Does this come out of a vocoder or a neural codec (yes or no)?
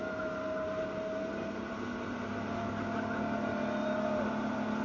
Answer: no